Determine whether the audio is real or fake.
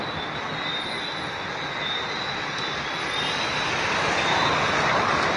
real